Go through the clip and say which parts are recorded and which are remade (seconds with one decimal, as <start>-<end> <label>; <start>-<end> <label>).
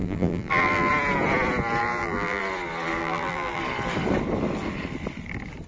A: 0.0-0.9 remade; 0.9-1.8 recorded; 1.8-2.4 remade; 2.4-3.0 recorded; 3.0-3.6 remade; 3.6-5.7 recorded